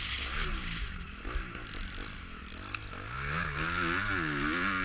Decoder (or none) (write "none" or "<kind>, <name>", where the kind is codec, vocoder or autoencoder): none